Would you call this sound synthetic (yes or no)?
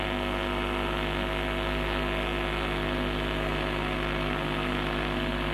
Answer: yes